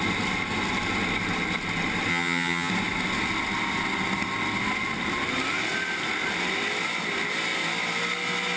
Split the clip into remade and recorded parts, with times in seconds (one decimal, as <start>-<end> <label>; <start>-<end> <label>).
0.0-2.1 recorded; 2.1-2.7 remade; 2.7-8.6 recorded